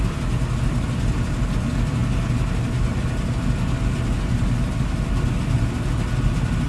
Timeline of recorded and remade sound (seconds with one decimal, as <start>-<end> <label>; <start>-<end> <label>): 0.0-6.7 recorded